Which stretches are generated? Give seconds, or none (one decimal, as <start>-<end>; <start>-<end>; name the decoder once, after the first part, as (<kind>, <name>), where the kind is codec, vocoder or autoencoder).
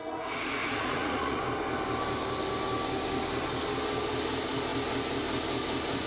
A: 0.0-1.4 (vocoder, Vocos)